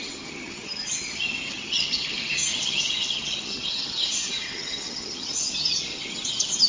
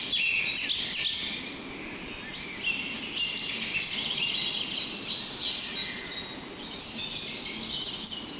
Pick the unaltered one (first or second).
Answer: second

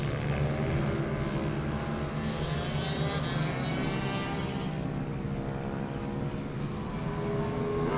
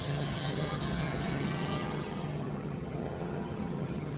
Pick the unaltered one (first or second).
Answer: first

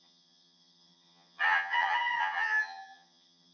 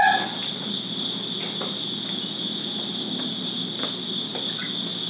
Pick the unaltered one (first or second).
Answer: second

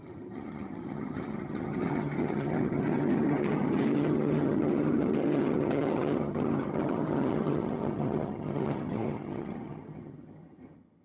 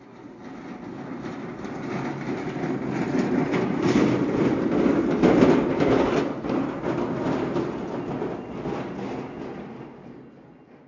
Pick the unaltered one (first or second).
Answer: second